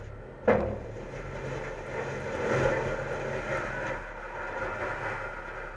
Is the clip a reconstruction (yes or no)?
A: no